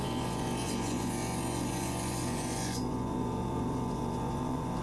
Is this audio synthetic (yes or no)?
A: yes